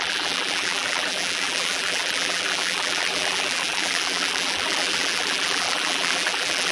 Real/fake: fake